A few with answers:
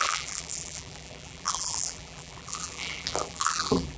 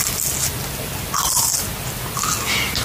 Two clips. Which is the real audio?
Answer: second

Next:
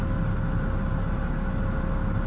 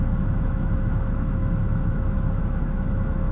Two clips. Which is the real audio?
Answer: first